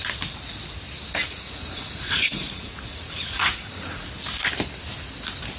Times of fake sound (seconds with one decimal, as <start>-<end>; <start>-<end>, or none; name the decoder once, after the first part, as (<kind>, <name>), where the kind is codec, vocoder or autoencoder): 1.2-4.1 (vocoder, Vocos)